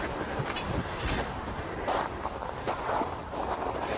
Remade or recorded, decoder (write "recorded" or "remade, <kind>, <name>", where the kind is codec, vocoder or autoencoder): recorded